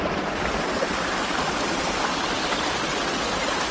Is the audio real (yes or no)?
yes